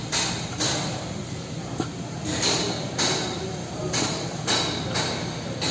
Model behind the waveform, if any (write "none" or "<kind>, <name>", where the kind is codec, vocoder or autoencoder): none